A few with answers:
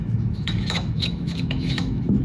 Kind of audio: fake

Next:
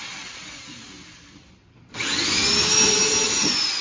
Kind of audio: real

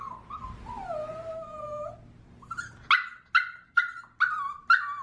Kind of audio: real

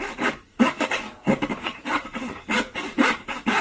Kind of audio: fake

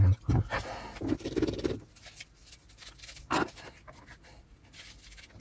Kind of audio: real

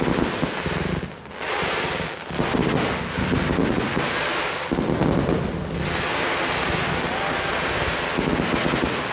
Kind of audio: real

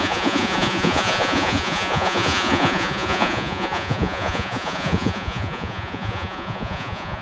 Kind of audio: fake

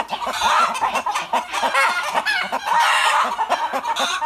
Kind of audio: real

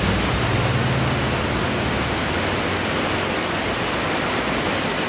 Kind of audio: real